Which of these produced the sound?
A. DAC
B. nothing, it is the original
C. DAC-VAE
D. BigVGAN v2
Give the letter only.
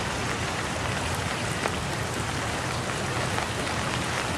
B